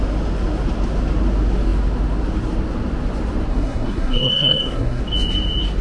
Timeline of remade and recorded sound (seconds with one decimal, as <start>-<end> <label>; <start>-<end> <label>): 0.0-3.5 recorded; 3.5-5.0 remade; 5.0-5.8 recorded